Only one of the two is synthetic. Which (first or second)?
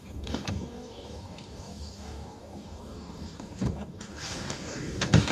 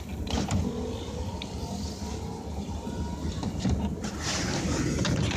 first